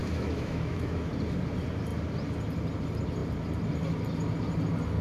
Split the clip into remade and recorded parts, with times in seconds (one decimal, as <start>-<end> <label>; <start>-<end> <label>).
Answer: 0.0-1.1 remade; 1.1-5.0 recorded